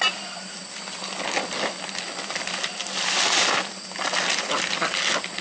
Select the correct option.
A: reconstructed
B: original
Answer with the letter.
B